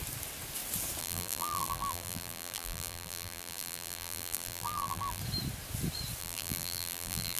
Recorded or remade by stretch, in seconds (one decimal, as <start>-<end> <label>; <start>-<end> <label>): 0.0-1.0 recorded; 1.0-5.2 remade; 5.2-6.2 recorded; 6.2-7.4 remade